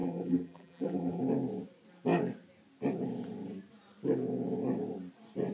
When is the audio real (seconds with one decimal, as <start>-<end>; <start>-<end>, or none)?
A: 1.2-5.5